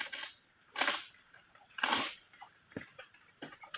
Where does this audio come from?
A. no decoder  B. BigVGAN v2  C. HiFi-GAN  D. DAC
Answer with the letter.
B